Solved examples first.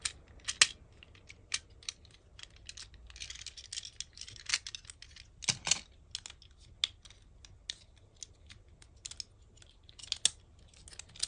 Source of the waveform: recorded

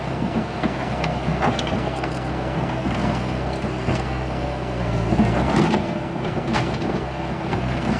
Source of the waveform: remade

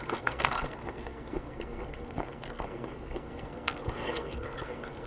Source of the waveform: remade